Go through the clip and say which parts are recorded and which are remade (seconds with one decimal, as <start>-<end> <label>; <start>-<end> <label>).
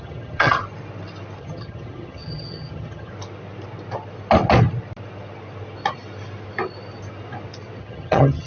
0.0-0.6 remade; 0.6-1.4 recorded; 1.4-3.1 remade; 3.1-7.8 recorded; 7.8-8.5 remade